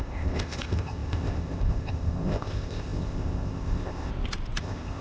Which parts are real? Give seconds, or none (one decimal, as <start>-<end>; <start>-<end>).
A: 4.1-4.6